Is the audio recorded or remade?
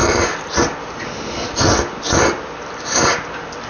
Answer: recorded